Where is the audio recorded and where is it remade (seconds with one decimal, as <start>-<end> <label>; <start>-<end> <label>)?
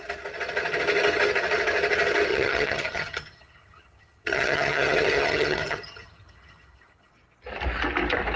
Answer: 0.0-2.3 recorded; 2.3-7.1 remade; 7.1-8.4 recorded